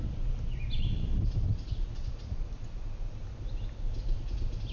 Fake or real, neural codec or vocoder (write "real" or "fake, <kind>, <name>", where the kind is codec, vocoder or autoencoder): real